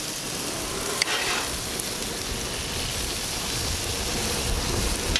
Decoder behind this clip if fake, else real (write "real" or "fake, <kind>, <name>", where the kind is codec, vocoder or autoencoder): real